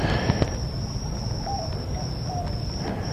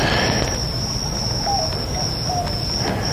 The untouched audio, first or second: second